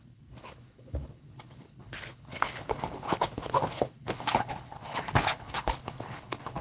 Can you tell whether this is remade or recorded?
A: remade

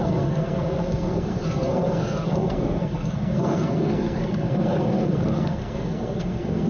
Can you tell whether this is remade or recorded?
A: remade